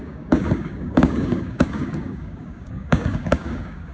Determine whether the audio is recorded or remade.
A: remade